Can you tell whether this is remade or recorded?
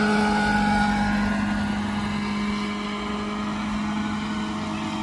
recorded